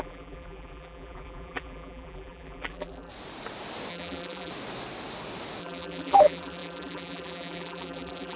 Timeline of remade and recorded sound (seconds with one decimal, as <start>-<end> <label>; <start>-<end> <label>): 0.0-3.1 remade; 3.1-3.9 recorded; 3.9-4.5 remade; 4.5-5.6 recorded; 5.6-8.4 remade